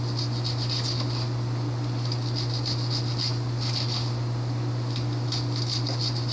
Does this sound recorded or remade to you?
recorded